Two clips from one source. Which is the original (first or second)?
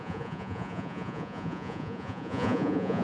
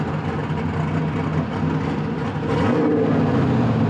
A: second